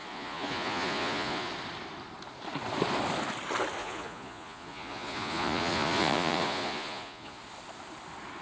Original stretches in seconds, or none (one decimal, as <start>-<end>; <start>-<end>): 1.5-3.8; 7.4-8.4